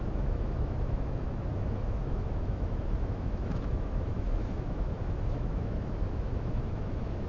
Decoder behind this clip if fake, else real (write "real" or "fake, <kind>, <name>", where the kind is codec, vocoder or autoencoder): fake, autoencoder, DAC-VAE